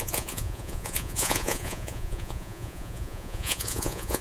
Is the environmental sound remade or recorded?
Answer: remade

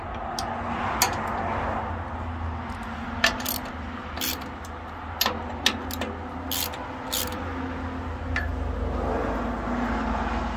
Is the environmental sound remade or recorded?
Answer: recorded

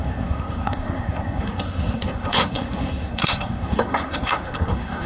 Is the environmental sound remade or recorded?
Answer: remade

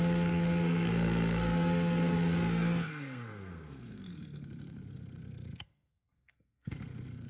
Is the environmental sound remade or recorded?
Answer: remade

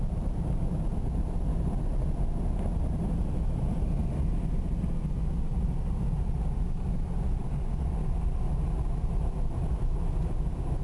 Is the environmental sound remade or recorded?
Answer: recorded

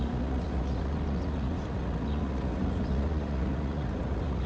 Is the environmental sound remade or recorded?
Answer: remade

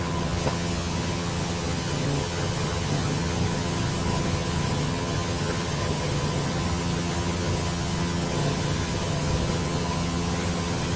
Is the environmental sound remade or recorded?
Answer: remade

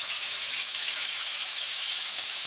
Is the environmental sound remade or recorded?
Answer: remade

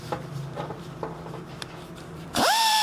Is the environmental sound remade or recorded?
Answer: remade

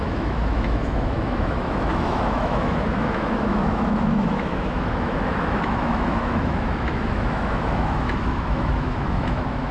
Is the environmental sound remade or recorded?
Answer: remade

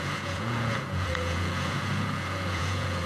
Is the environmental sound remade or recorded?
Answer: remade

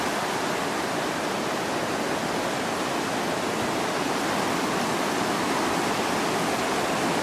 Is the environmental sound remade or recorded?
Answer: recorded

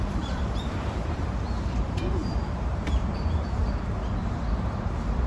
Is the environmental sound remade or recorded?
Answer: remade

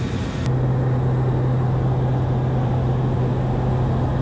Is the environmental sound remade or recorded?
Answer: recorded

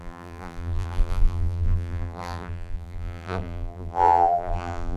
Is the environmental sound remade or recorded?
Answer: remade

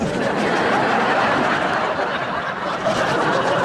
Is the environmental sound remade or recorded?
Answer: recorded